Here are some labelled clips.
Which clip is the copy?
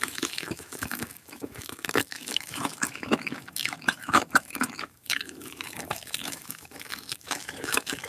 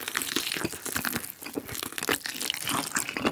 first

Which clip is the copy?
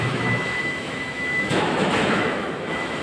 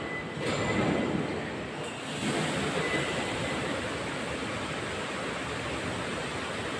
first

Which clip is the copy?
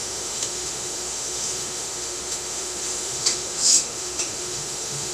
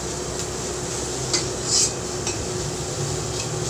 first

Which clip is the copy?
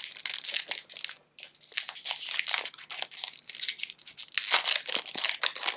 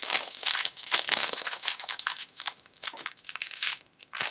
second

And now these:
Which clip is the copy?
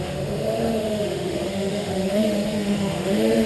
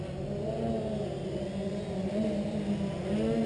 first